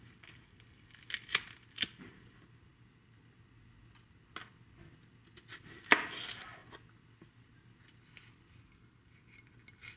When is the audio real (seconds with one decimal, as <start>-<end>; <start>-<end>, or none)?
0.0-10.0

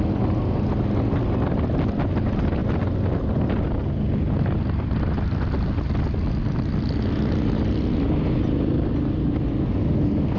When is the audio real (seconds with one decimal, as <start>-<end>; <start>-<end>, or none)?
0.0-10.4

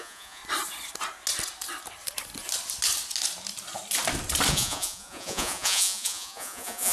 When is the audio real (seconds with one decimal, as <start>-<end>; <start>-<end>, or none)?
0.4-4.5

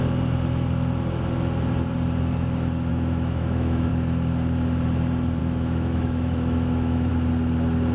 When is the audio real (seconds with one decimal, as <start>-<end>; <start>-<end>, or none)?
0.0-2.9; 3.9-5.4; 7.1-7.9

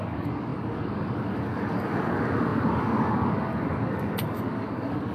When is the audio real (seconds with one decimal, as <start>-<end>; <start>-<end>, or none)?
none

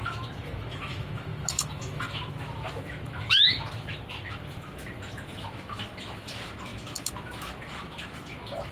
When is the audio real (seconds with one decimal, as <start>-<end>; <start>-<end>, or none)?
none

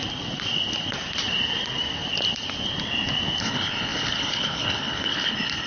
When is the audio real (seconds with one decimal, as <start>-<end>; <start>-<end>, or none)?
0.0-3.4

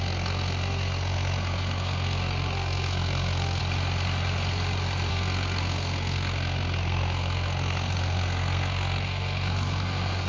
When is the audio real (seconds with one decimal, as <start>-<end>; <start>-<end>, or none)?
3.6-5.1